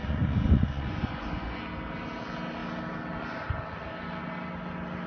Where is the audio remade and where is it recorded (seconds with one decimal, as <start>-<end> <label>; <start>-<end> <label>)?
0.0-1.6 remade; 1.6-5.1 recorded